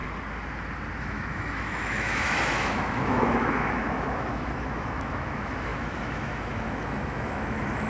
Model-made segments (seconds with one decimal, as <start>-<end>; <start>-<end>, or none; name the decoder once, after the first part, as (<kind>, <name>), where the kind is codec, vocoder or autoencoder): 1.0-7.9 (autoencoder, DAC-VAE)